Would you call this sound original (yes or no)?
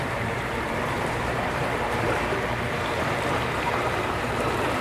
no